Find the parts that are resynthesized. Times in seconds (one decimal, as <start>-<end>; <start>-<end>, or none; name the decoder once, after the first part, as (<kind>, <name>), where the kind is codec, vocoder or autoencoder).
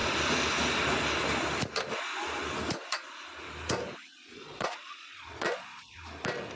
4.0-6.0 (vocoder, Vocos)